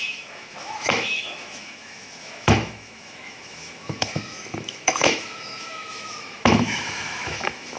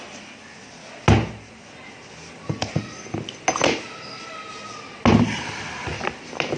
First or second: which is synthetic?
first